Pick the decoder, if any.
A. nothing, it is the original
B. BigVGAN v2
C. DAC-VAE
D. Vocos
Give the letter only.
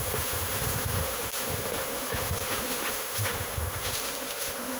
C